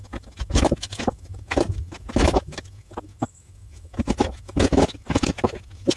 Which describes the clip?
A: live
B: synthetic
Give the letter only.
B